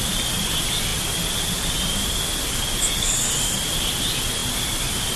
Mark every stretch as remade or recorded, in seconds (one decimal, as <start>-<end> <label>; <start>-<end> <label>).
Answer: 0.0-5.2 recorded